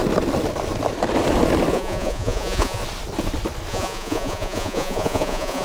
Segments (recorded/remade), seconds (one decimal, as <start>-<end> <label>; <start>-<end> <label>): 0.0-1.7 recorded; 1.7-2.8 remade; 2.8-3.7 recorded; 3.7-5.6 remade